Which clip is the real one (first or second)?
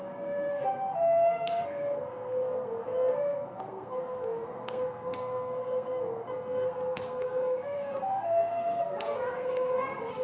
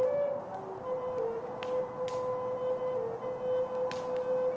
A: second